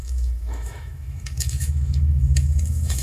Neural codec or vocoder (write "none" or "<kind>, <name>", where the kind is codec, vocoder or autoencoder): autoencoder, DAC-VAE